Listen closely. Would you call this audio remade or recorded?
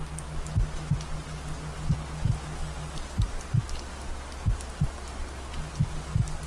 recorded